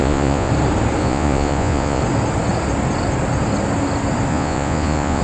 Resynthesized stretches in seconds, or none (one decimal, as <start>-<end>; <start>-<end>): 0.0-0.5; 1.0-2.0; 4.3-5.2